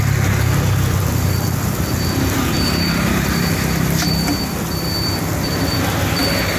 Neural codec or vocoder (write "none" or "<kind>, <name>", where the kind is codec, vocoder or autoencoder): vocoder, BigVGAN v2